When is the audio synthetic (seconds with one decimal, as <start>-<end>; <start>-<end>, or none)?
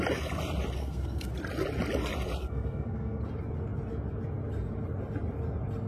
0.8-1.3; 2.4-3.2